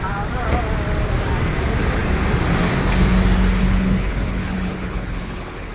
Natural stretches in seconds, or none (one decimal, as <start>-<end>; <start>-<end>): 0.0-3.6